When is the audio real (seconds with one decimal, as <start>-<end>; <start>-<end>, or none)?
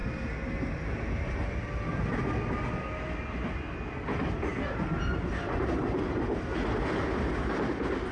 0.0-8.1